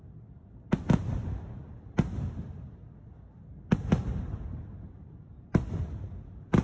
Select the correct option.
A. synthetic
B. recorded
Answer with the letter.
B